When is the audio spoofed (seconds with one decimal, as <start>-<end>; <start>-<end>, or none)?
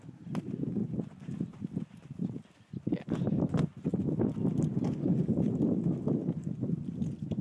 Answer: none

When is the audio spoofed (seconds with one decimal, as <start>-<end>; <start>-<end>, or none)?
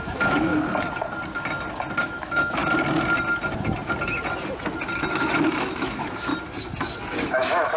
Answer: 0.0-0.5; 2.0-2.6; 5.1-6.3; 7.0-7.8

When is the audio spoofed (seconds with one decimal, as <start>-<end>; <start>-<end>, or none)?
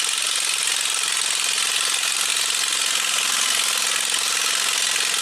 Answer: none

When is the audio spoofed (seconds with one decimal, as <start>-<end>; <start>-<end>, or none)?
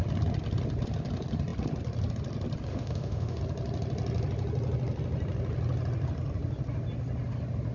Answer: 2.7-3.4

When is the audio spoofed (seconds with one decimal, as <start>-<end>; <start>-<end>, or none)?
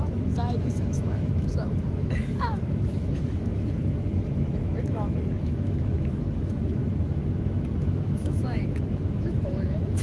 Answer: 0.0-6.8; 7.8-10.0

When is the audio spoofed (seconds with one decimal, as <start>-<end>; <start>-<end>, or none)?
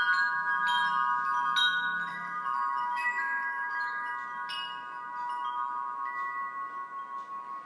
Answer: 2.1-4.1